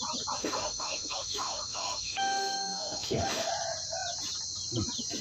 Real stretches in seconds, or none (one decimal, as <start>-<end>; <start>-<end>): 0.0-0.4; 3.5-5.2